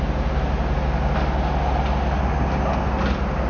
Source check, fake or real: real